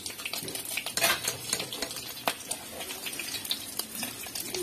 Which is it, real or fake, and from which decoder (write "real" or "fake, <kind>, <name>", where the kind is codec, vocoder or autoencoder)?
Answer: real